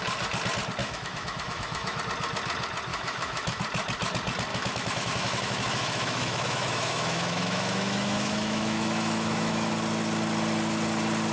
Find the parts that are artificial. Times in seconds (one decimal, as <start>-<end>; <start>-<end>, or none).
0.8-2.0; 2.9-3.6; 4.5-9.7